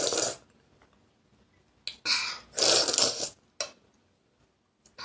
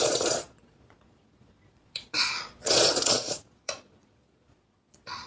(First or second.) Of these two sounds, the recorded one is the first